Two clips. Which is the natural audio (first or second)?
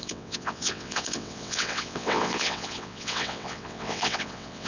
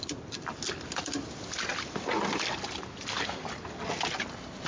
second